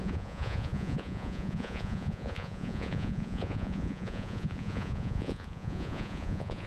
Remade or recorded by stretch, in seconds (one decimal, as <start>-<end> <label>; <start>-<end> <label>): 0.0-6.7 remade